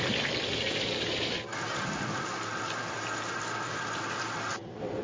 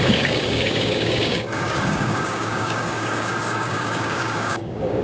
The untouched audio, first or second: first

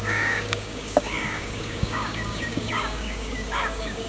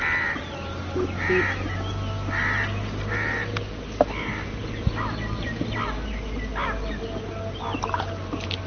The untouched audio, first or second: second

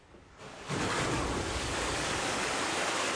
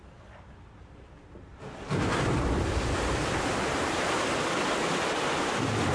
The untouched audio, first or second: second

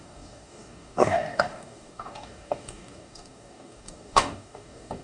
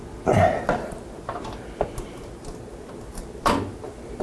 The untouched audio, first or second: second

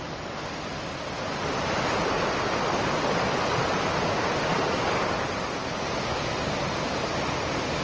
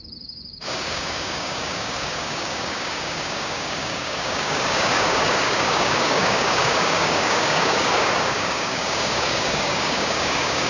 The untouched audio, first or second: first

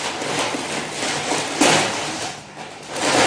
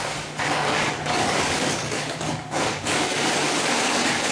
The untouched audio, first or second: first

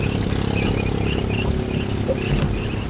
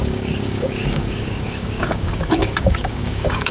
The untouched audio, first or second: first